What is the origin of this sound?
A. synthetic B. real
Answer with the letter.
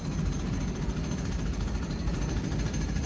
B